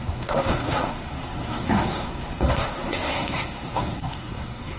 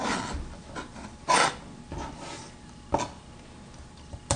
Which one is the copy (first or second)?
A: first